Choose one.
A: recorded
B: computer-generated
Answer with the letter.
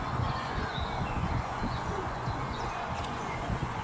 B